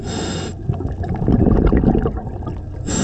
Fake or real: real